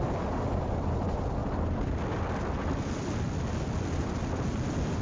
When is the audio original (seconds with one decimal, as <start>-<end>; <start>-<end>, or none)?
0.0-5.0